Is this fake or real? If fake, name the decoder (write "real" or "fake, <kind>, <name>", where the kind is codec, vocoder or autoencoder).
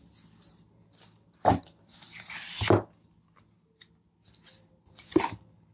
real